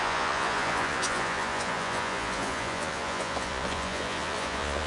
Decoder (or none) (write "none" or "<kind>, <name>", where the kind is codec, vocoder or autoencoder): vocoder, Vocos